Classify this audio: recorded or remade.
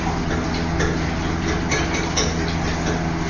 recorded